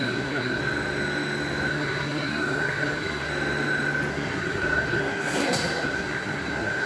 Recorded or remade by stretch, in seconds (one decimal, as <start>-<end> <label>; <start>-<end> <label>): 0.0-0.6 remade; 0.6-1.7 recorded; 1.7-3.3 remade; 3.3-4.1 recorded; 4.1-6.9 remade